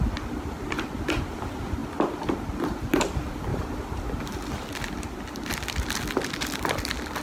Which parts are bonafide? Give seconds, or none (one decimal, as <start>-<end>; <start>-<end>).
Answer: 0.0-3.5; 4.1-7.2